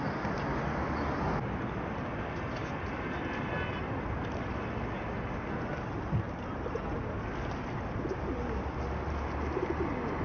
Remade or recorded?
recorded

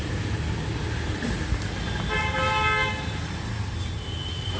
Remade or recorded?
recorded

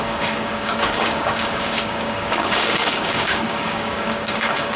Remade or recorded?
remade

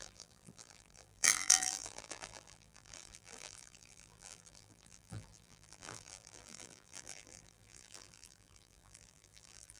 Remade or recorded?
remade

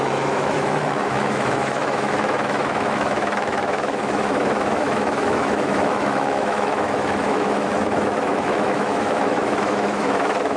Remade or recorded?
remade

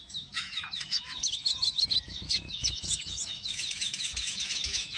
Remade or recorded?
remade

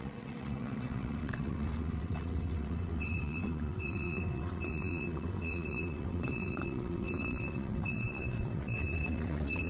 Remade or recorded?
remade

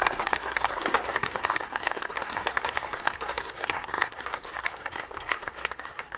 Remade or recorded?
remade